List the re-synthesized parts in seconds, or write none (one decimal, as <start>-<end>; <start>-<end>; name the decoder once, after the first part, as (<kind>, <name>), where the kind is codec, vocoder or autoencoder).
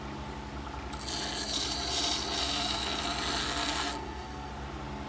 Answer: 2.4-3.0 (codec, SNAC); 3.4-4.5